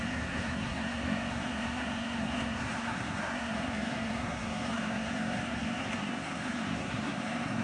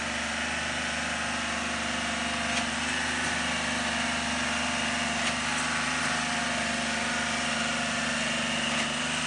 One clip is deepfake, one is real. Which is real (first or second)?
second